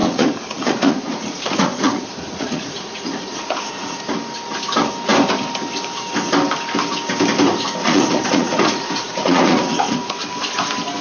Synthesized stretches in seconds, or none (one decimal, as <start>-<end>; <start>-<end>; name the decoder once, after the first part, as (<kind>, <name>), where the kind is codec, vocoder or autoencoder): 0.0-4.0 (vocoder, Vocos); 7.8-10.1